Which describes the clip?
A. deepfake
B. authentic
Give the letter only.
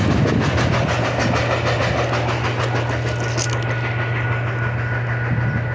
B